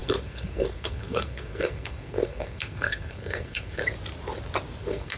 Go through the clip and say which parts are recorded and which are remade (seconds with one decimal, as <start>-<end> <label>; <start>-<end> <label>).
0.0-3.8 remade; 3.8-4.8 recorded; 4.8-5.2 remade